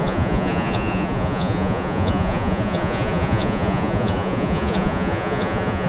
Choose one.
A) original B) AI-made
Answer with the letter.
B